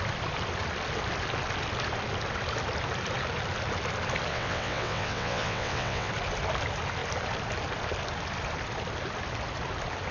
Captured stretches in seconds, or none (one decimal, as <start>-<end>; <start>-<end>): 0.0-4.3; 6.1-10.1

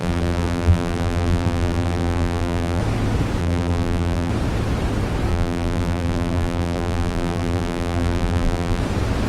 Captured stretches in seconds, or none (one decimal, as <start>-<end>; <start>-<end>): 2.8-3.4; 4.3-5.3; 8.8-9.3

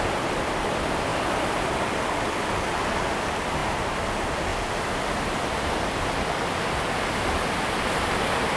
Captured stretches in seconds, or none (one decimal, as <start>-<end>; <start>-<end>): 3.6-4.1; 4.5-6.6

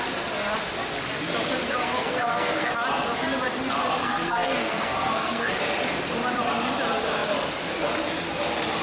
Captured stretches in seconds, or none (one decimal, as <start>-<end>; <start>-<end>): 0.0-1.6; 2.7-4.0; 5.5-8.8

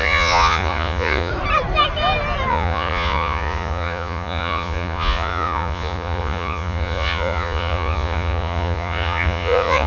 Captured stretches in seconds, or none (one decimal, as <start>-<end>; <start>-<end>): 1.3-2.5

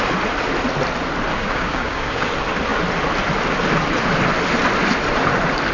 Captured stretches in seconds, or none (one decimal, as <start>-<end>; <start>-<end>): 0.0-1.3; 2.3-5.7